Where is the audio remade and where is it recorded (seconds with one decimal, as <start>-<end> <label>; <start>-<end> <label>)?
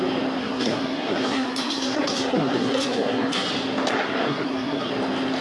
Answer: 0.0-0.4 recorded; 0.4-3.5 remade; 3.5-3.9 recorded; 3.9-4.9 remade; 4.9-5.4 recorded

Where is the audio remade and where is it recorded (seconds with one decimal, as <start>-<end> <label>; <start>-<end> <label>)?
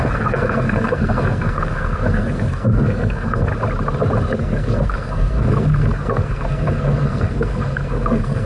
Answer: 0.0-3.5 remade; 3.5-4.4 recorded; 4.4-8.5 remade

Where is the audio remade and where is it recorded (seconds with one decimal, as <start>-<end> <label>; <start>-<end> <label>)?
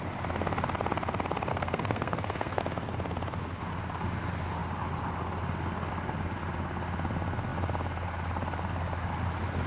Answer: 0.0-1.5 recorded; 1.5-2.6 remade; 2.6-9.7 recorded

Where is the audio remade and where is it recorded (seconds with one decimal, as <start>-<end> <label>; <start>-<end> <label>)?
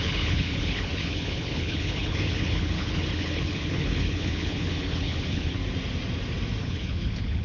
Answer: 0.0-5.6 remade; 5.6-6.6 recorded; 6.6-7.4 remade